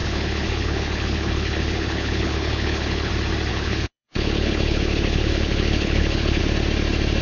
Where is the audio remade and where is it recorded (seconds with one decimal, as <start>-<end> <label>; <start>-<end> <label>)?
0.0-3.1 remade; 3.1-3.5 recorded; 3.5-6.4 remade; 6.4-7.2 recorded